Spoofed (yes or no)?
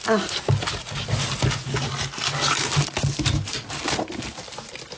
no